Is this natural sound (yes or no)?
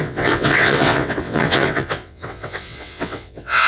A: no